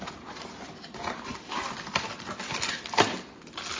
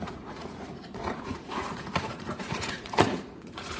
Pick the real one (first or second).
first